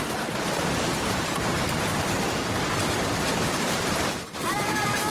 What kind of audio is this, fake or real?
fake